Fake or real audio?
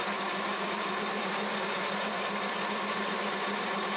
fake